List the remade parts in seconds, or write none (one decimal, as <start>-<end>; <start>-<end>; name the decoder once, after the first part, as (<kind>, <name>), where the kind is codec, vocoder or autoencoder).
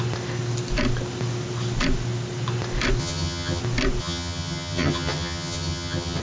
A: 3.0-3.6 (vocoder, HiFi-GAN); 4.0-6.2